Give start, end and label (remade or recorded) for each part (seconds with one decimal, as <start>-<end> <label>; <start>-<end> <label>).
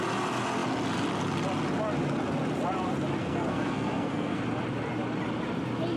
0.0-3.2 recorded; 3.2-4.4 remade; 4.4-6.0 recorded